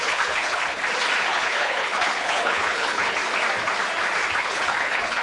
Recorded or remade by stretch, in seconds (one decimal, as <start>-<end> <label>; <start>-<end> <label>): 0.0-0.8 remade; 0.8-1.3 recorded; 1.3-3.2 remade; 3.2-4.4 recorded; 4.4-5.2 remade